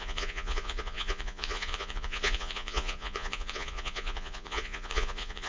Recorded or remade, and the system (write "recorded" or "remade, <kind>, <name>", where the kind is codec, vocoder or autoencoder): remade, vocoder, Vocos